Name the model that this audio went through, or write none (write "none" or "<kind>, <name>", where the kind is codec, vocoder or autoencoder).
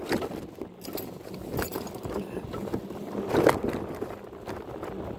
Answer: none